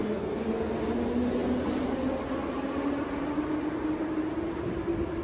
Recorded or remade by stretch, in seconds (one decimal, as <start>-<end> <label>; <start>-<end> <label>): 0.0-0.7 remade; 0.7-5.2 recorded